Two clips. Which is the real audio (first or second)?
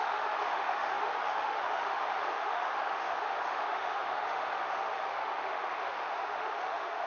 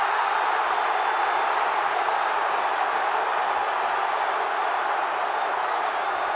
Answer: second